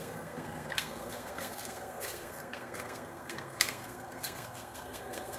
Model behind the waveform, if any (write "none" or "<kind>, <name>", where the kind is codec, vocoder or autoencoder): codec, SNAC